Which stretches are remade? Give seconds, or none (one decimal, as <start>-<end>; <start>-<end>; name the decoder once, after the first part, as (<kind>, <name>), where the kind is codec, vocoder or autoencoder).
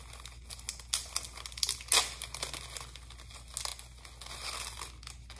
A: none